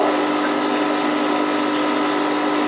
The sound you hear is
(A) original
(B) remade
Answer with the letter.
A